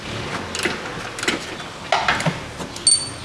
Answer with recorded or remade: recorded